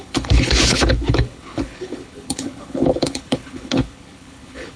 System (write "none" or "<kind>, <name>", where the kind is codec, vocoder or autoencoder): codec, HILCodec